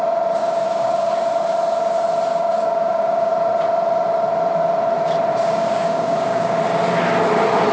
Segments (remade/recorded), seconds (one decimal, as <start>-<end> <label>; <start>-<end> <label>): 0.0-0.4 recorded; 0.4-1.1 remade; 1.1-2.3 recorded; 2.3-3.3 remade; 3.3-5.3 recorded; 5.3-6.6 remade; 6.6-7.7 recorded